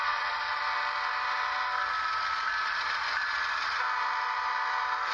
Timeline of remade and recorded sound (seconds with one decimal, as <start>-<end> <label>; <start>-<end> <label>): 0.0-0.6 remade; 0.6-5.1 recorded